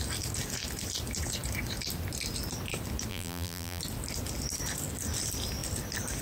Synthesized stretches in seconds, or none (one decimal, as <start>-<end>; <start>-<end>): 3.1-3.8

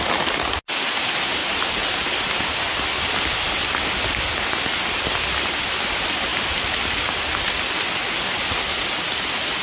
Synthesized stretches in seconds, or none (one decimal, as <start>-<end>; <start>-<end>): none

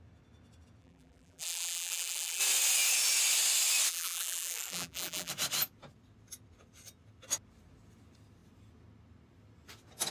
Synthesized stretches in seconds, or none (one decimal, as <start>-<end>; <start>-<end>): 0.8-2.4; 3.9-5.3

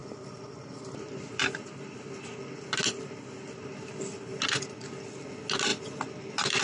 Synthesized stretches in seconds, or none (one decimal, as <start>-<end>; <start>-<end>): 0.0-4.0; 5.7-6.6

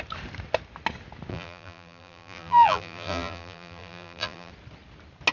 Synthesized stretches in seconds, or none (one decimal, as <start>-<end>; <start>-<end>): 1.3-4.5